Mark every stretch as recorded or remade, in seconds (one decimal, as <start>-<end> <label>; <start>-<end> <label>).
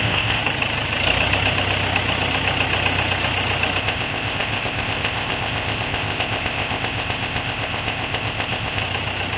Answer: 0.0-0.4 remade; 0.4-3.8 recorded; 3.8-8.8 remade; 8.8-9.4 recorded